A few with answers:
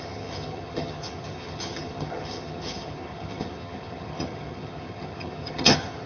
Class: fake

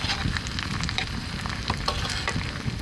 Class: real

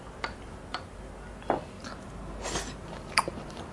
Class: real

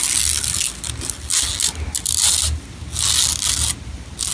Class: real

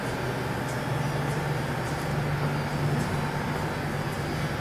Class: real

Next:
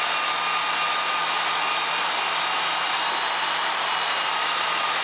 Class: real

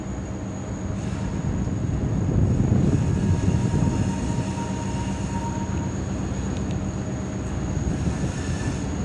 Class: real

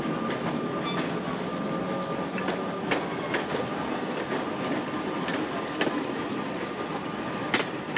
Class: real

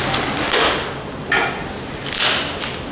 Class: real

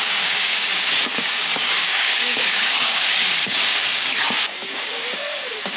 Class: fake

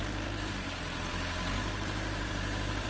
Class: fake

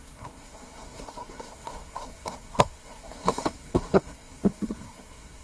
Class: fake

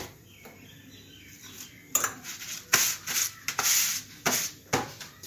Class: real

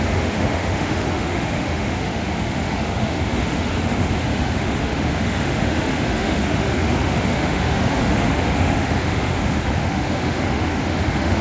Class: fake